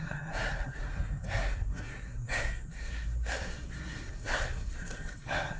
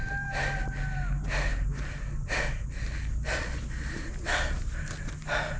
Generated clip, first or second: first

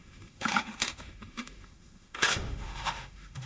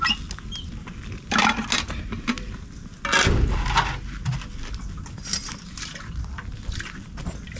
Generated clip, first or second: first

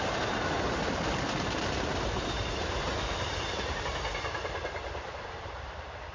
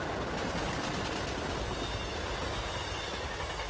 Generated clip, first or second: first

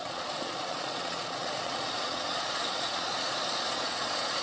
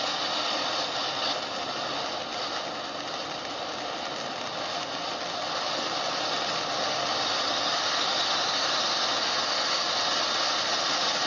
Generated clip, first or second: first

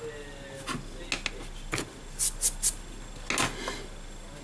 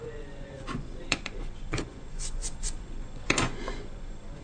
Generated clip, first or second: second